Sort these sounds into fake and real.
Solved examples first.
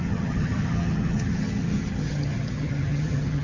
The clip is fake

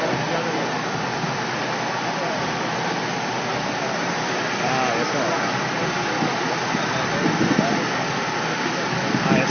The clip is real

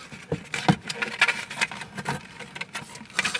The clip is real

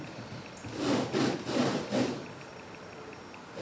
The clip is real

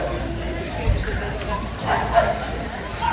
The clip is real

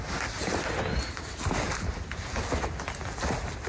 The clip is real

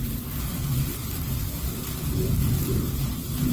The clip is real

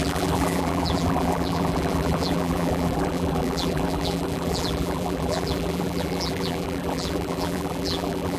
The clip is fake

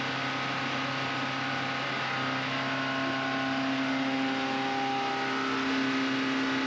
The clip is real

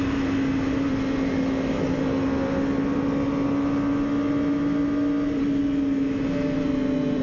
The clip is real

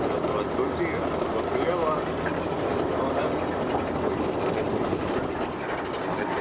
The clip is fake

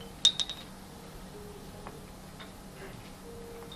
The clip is real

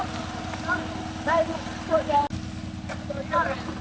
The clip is real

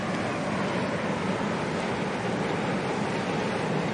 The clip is real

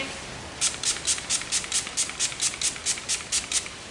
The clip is real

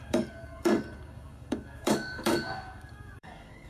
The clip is fake